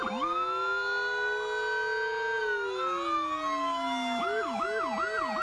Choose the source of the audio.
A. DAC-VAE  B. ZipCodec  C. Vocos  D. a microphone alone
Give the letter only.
D